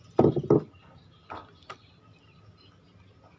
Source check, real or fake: real